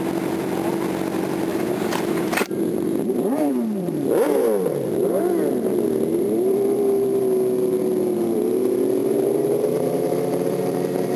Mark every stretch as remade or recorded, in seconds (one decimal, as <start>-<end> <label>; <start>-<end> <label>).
0.0-1.5 recorded; 1.5-4.1 remade; 4.1-6.1 recorded; 6.1-7.2 remade; 7.2-9.0 recorded; 9.0-11.2 remade